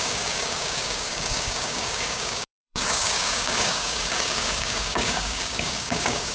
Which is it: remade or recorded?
remade